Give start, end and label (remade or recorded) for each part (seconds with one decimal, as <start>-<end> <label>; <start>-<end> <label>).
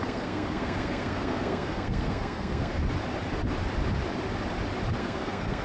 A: 0.0-2.8 remade; 2.8-5.0 recorded; 5.0-5.6 remade